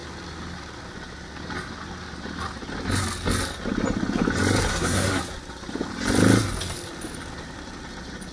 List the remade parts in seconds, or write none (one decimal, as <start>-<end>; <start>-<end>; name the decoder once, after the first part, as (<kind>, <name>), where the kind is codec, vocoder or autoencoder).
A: 4.7-5.2 (codec, SNAC)